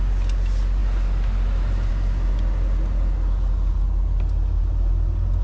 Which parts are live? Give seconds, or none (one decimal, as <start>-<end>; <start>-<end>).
0.0-5.4